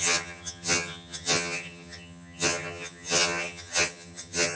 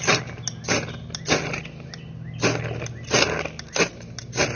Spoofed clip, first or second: first